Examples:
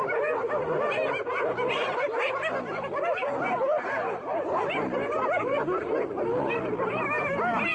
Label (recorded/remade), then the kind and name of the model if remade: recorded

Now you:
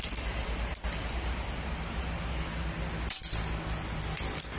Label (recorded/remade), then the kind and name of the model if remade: recorded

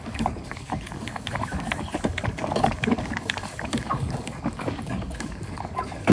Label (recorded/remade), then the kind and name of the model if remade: remade, codec, DAC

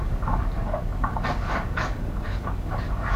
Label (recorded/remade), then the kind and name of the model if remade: remade, codec, DAC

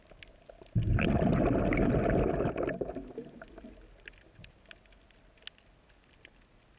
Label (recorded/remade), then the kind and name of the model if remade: recorded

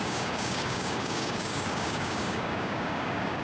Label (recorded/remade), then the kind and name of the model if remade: remade, codec, DAC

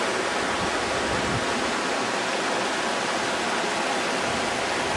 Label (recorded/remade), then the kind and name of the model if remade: recorded